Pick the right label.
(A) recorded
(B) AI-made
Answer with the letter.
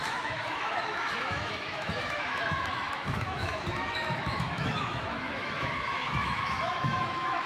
B